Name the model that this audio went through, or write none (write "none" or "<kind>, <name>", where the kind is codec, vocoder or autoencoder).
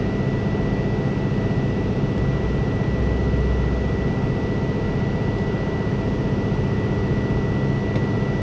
none